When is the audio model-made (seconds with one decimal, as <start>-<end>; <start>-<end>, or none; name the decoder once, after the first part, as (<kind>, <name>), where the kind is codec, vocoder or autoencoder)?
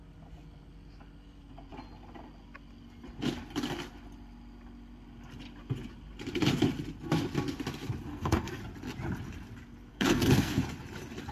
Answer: 8.1-8.6 (codec, SNAC); 9.9-10.6